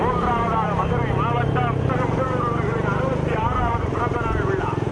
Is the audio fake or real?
real